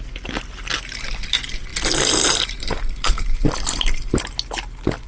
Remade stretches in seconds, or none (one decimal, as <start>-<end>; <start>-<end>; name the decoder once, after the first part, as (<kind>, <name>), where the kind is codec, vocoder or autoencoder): none